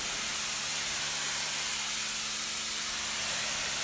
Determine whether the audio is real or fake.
real